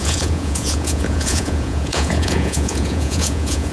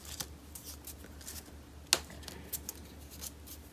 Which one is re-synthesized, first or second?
first